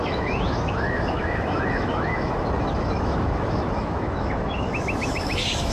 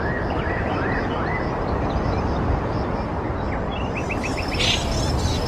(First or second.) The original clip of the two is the second